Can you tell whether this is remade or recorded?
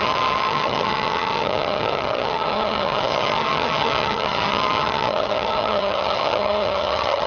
remade